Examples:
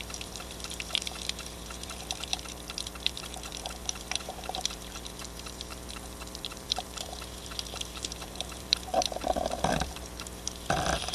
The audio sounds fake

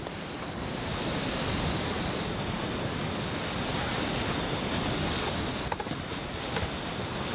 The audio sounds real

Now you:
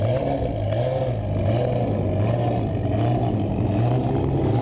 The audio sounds real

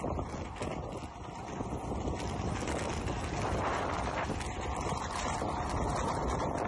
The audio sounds fake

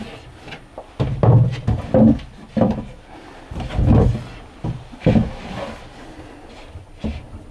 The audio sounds real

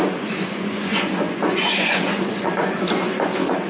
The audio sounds fake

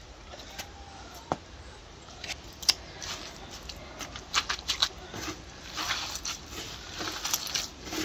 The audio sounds real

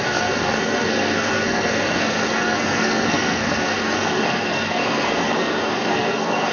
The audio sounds fake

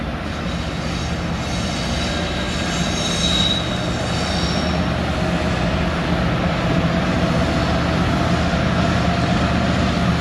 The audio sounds real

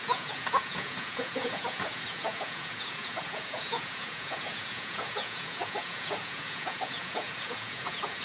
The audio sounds fake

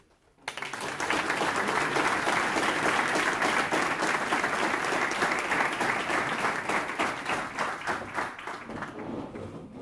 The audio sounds real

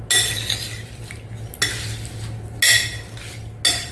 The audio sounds real